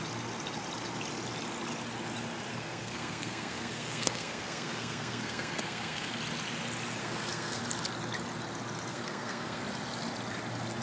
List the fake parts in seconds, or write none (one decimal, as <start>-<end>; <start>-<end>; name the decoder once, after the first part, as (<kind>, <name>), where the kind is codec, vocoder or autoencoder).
2.5-6.2 (codec, SNAC); 7.0-7.6; 8.9-9.6

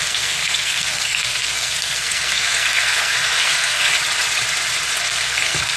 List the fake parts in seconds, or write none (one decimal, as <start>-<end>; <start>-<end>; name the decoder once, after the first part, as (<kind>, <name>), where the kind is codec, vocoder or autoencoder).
0.0-3.9 (codec, SNAC); 5.0-5.8

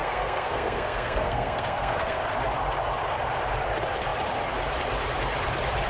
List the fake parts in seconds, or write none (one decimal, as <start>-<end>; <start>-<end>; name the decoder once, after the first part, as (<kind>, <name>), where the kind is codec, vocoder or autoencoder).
0.0-2.2 (codec, SNAC)

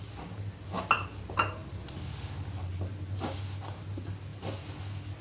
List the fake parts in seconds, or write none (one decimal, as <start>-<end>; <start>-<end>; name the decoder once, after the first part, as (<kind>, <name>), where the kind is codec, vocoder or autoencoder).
none